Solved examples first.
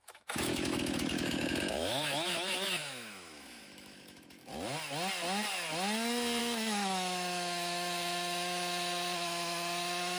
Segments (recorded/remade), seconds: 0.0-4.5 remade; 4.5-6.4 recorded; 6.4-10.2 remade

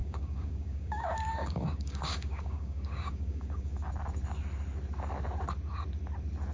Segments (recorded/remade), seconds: 0.0-3.9 remade; 3.9-6.5 recorded

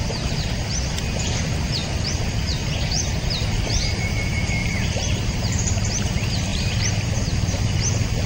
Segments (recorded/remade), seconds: 0.0-4.6 recorded; 4.6-6.0 remade; 6.0-6.5 recorded; 6.5-7.1 remade; 7.1-8.3 recorded

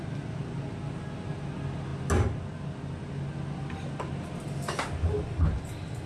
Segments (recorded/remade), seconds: 0.0-6.1 recorded

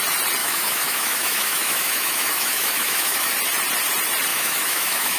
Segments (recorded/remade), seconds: 0.0-0.4 recorded; 0.4-3.3 remade; 3.3-4.3 recorded; 4.3-5.2 remade

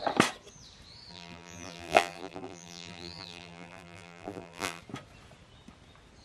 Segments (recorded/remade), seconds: 0.0-1.1 recorded; 1.1-4.8 remade; 4.8-6.2 recorded

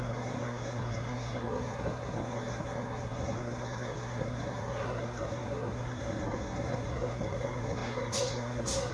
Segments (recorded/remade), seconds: 0.0-8.9 remade